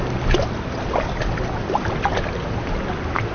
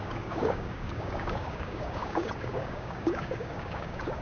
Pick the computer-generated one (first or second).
second